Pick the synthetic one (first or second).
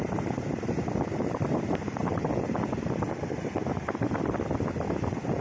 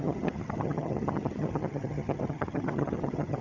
second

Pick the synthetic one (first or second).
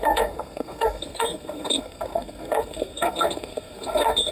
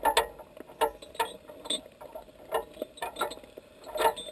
first